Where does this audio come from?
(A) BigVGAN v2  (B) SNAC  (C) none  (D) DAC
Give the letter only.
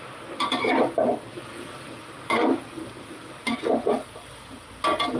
C